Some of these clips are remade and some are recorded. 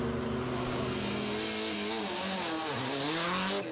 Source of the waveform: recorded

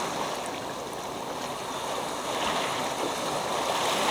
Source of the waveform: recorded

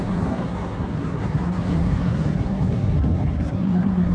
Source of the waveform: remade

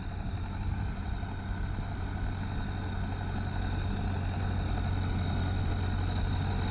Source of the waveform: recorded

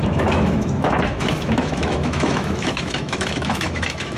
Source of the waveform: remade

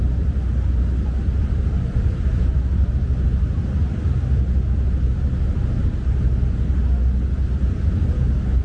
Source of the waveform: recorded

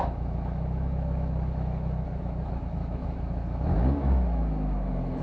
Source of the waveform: remade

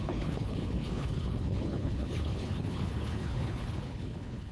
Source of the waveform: remade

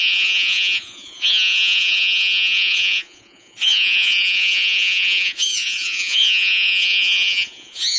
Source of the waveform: remade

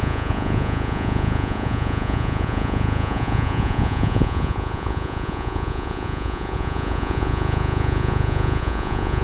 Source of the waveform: remade